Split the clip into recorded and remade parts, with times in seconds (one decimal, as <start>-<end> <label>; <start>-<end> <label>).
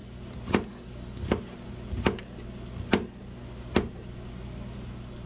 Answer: 0.0-5.3 recorded